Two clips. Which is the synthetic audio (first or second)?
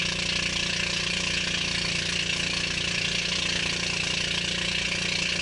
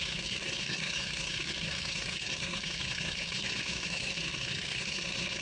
second